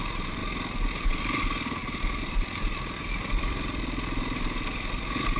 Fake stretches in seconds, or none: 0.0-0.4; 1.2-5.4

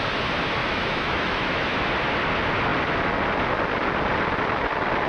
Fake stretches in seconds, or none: 0.6-1.6

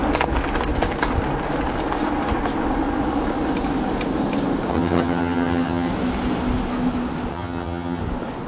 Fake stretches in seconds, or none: 4.7-5.9; 7.3-8.0

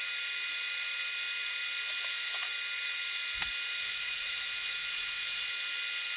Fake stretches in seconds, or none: 3.8-5.5